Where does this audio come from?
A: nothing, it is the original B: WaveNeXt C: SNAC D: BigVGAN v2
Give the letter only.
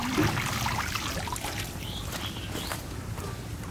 A